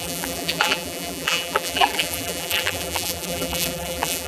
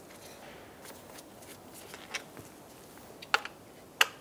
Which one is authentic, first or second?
second